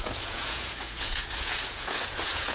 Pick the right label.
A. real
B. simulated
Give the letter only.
B